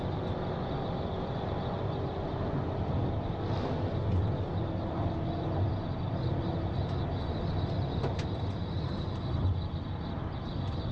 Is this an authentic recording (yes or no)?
yes